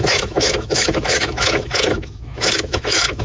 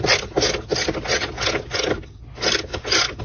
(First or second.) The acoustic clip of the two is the second